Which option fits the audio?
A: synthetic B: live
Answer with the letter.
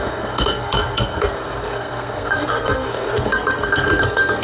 A